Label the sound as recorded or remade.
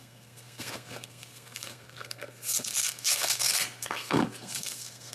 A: remade